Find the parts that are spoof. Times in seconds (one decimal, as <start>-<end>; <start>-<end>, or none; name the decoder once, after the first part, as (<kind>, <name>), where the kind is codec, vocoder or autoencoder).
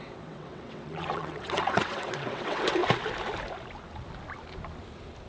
0.0-2.8 (vocoder, WaveNeXt)